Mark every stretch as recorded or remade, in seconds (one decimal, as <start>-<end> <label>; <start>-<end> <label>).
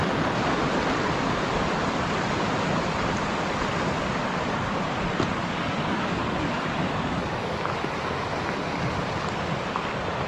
0.0-5.4 recorded; 5.4-6.2 remade; 6.2-6.8 recorded; 6.8-8.2 remade; 8.2-10.3 recorded